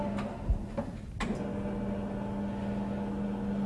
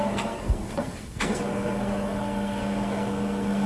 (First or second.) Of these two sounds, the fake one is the second